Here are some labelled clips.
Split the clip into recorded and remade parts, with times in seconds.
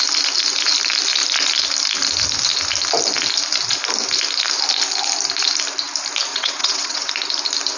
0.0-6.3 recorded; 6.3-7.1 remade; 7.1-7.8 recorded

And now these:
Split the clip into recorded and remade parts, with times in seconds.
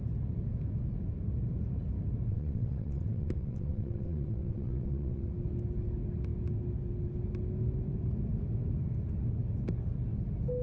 0.0-2.3 recorded; 2.3-5.3 remade; 5.3-10.6 recorded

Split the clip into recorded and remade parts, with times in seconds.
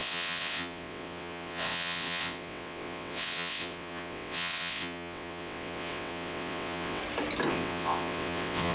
0.0-7.0 remade; 7.0-7.5 recorded; 7.5-8.7 remade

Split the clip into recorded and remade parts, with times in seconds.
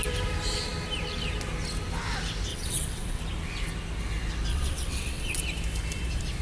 0.0-2.5 recorded; 2.5-3.2 remade; 3.2-4.5 recorded; 4.5-5.4 remade; 5.4-6.4 recorded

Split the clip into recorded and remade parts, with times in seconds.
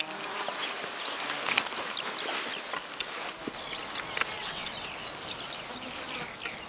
0.0-4.4 recorded; 4.4-4.9 remade; 4.9-6.7 recorded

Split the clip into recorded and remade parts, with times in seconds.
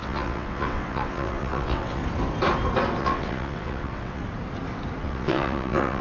0.0-2.0 remade; 2.0-3.0 recorded; 3.0-4.2 remade; 4.2-5.0 recorded; 5.0-6.0 remade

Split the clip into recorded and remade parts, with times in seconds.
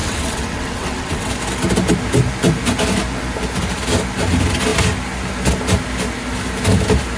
0.0-1.3 remade; 1.3-7.2 recorded